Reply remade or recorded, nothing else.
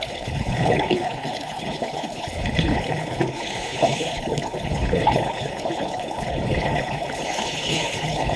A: remade